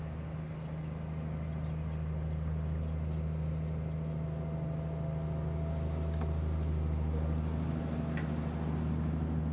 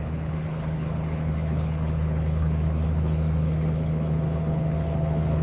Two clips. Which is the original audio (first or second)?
first